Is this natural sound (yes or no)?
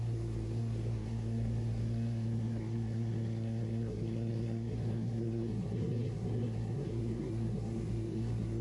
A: no